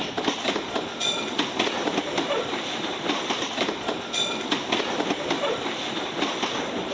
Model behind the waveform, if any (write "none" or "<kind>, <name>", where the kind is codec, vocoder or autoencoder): none